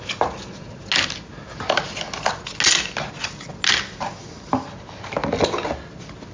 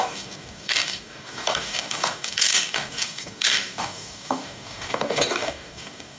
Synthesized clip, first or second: second